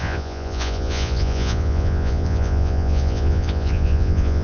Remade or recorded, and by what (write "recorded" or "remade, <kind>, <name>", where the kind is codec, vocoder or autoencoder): remade, vocoder, Vocos